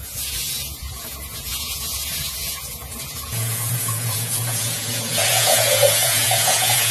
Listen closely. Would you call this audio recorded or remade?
remade